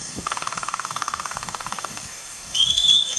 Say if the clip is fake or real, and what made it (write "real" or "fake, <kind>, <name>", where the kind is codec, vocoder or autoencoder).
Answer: fake, codec, DAC